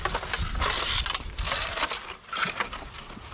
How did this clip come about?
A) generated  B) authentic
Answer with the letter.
B